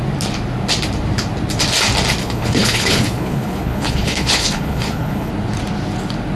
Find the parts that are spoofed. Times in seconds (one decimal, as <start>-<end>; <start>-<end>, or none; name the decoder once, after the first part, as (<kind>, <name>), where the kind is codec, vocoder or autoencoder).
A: 2.2-5.3 (codec, HILCodec)